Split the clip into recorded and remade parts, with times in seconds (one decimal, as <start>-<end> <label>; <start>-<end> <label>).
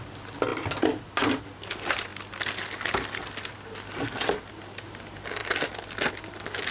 0.0-6.7 recorded